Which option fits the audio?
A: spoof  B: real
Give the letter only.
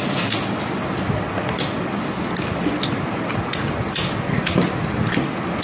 B